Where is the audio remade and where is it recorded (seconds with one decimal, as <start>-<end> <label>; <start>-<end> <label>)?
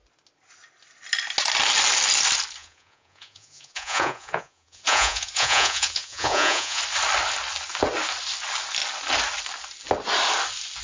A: 0.0-2.6 recorded; 2.6-6.8 remade; 6.8-10.8 recorded